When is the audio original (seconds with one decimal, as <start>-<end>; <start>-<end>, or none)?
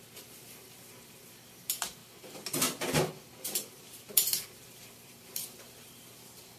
2.0-3.7